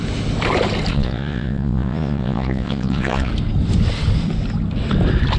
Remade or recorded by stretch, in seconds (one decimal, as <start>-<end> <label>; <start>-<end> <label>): 0.0-0.9 recorded; 0.9-3.3 remade; 3.3-5.4 recorded